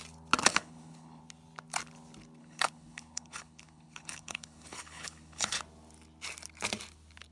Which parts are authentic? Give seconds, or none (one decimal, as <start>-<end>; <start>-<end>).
0.0-0.5; 1.2-2.4; 5.6-7.3